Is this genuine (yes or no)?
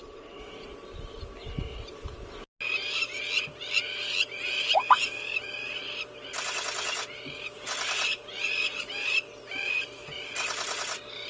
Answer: yes